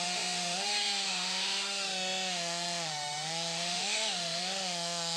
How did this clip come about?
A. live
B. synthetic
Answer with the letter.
B